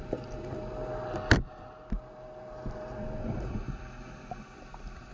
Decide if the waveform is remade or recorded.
recorded